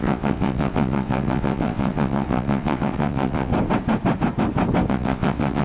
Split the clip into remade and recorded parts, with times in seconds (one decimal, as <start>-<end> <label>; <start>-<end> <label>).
0.0-3.5 remade; 3.5-4.9 recorded; 4.9-5.6 remade